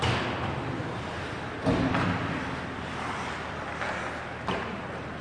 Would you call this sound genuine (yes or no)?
yes